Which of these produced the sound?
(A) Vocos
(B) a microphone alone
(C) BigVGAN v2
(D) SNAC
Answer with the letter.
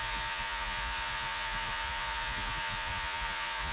A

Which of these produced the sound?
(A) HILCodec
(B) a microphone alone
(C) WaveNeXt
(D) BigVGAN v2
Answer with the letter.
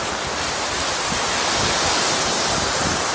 B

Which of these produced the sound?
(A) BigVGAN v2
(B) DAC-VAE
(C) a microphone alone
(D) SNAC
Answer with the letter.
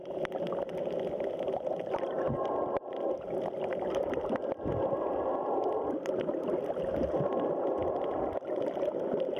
C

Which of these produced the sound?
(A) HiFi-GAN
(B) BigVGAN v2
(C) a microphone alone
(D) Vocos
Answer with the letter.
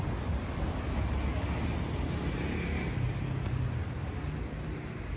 C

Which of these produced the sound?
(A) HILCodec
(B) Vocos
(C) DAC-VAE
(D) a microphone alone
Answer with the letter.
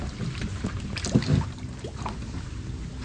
D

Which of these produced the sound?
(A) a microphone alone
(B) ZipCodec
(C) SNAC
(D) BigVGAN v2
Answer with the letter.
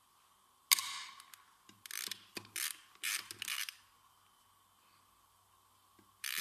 A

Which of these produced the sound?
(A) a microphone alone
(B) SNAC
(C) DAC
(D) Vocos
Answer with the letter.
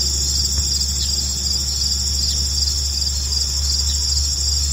A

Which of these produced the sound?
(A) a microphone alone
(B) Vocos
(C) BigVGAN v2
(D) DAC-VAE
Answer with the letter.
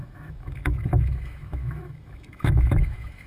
D